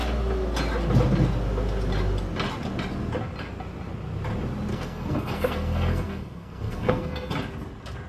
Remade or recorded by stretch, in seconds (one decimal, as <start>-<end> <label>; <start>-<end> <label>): 0.0-4.7 recorded; 4.7-7.3 remade; 7.3-8.1 recorded